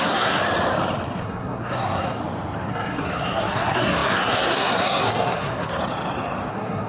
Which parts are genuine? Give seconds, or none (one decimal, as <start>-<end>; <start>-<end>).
0.4-1.2; 2.2-2.7; 5.8-6.5